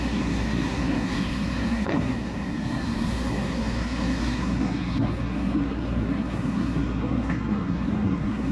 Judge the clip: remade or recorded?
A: remade